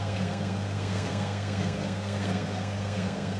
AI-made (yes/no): yes